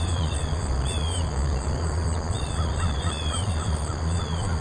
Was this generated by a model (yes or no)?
yes